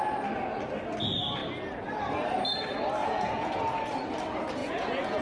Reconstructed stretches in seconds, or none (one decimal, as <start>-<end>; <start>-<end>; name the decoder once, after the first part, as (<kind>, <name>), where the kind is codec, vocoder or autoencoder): 3.0-3.6 (vocoder, Vocos); 4.6-5.2